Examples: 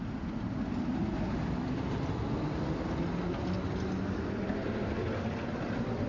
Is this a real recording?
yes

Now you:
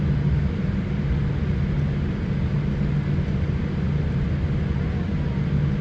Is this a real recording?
yes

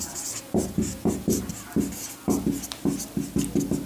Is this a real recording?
yes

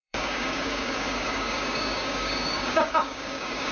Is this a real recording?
no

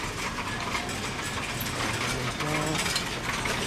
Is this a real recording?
yes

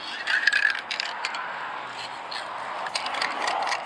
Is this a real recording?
yes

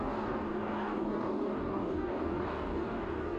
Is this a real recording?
no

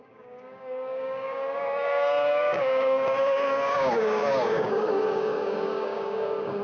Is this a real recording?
no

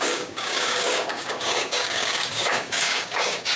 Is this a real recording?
no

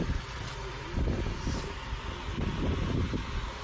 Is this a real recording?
yes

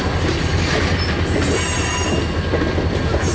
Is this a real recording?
yes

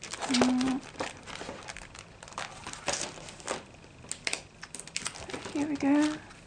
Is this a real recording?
yes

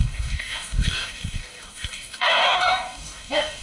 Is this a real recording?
no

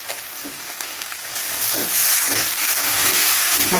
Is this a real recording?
no